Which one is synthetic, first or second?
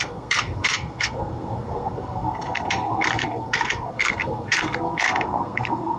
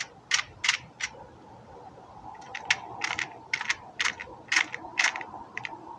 first